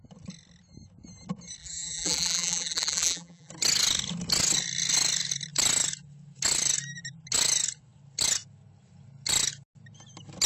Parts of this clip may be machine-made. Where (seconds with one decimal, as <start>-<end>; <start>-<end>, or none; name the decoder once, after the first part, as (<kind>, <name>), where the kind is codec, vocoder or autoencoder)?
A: 1.6-3.5 (vocoder, BigVGAN v2)